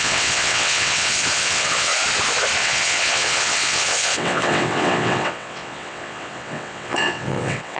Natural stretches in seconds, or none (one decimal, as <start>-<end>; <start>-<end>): 1.9-2.6